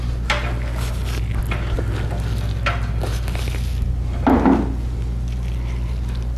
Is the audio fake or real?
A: real